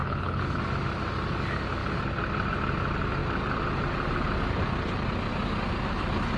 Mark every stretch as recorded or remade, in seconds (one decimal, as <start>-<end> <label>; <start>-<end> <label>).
0.0-0.6 remade; 0.6-6.4 recorded